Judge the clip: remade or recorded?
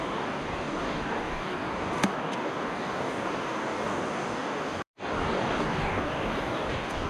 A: remade